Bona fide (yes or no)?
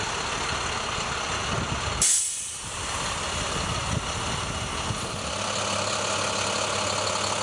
yes